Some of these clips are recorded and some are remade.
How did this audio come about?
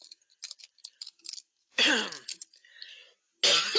recorded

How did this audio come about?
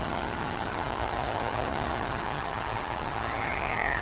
remade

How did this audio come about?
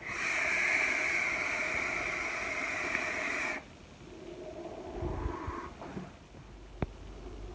recorded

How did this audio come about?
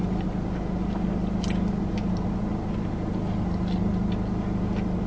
recorded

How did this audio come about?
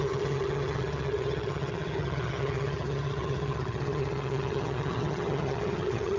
remade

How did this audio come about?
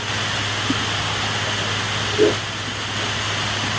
recorded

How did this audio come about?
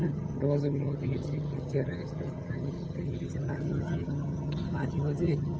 remade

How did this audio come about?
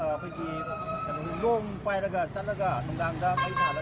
recorded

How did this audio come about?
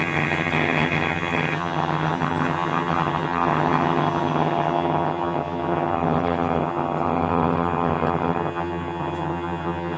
remade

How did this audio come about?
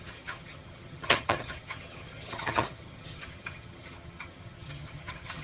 remade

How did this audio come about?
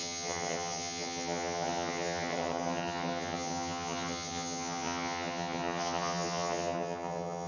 remade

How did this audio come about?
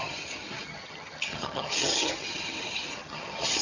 remade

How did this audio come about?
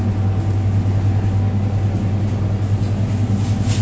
recorded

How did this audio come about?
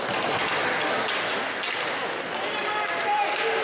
recorded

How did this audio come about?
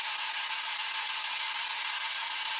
recorded